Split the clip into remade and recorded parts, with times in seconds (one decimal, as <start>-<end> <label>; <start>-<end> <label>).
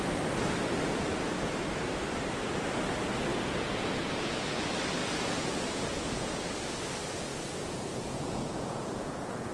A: 0.0-3.3 recorded; 3.3-4.4 remade; 4.4-5.0 recorded; 5.0-6.3 remade; 6.3-7.3 recorded; 7.3-9.5 remade